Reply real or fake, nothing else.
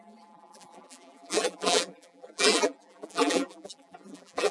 fake